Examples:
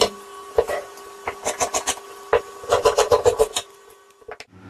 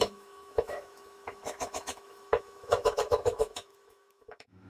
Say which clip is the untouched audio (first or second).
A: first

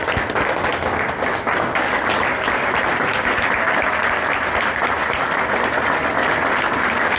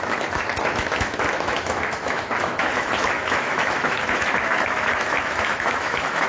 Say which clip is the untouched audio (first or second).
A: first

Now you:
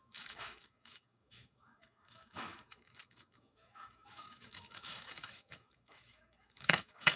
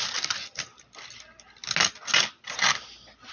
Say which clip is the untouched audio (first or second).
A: second